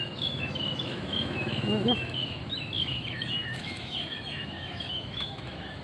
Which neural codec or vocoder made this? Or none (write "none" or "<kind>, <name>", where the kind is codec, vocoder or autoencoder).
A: autoencoder, DAC-VAE